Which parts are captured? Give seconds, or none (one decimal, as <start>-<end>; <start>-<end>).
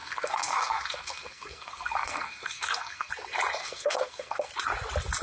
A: 3.1-3.6; 4.5-5.2